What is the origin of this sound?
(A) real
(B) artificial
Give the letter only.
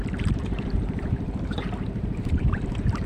B